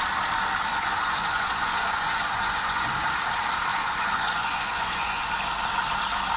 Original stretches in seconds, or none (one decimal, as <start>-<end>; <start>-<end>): 0.0-0.7; 2.9-3.7; 5.3-6.4